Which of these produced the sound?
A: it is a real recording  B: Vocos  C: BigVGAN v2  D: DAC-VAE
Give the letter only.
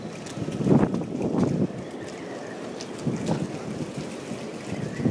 A